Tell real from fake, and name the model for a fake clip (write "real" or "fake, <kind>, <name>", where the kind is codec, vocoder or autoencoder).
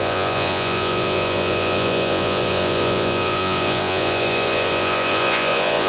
fake, vocoder, Vocos